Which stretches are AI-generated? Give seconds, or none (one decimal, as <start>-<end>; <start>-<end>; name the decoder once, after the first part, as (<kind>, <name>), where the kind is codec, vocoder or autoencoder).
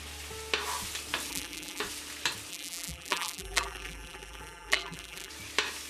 1.3-1.8 (vocoder, BigVGAN v2); 2.5-5.3